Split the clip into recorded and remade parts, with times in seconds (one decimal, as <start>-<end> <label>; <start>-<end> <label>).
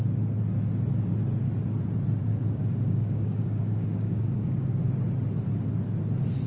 0.0-2.2 recorded; 2.2-4.8 remade; 4.8-6.5 recorded